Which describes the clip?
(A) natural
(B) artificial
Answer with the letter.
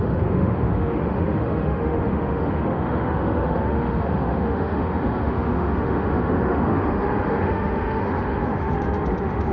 B